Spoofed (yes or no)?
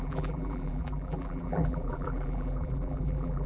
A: yes